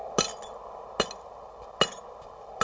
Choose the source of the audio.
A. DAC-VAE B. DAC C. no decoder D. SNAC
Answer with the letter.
C